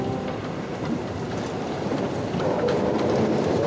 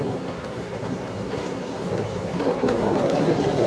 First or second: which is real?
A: first